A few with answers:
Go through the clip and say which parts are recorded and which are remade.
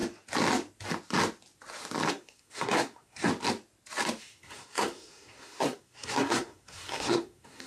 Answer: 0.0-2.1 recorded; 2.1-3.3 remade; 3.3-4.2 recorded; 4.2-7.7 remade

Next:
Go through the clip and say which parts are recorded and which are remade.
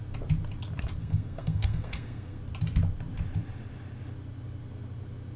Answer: 0.0-1.0 recorded; 1.0-2.4 remade; 2.4-5.4 recorded